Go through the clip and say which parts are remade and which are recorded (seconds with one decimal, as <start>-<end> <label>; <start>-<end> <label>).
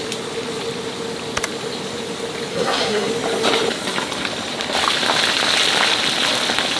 0.0-2.5 recorded; 2.5-3.1 remade; 3.1-6.8 recorded